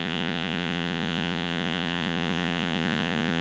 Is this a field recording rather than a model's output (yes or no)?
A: no